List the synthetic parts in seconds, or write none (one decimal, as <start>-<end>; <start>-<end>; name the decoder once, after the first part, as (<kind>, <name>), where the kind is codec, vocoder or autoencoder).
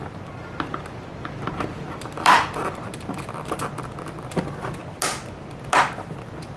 0.0-4.8 (vocoder, BigVGAN v2); 5.8-6.6